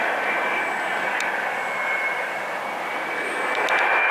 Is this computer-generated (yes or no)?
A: no